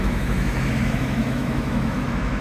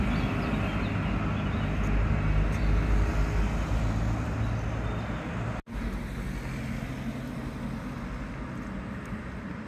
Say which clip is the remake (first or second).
first